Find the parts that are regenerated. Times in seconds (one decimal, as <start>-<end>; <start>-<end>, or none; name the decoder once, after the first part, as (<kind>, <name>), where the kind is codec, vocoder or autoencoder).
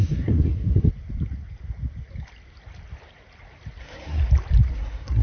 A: 0.0-0.9 (codec, SNAC); 3.8-4.2; 4.7-5.2